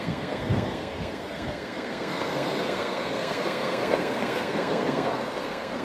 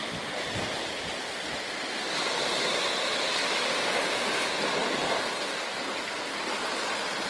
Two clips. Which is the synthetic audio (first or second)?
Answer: first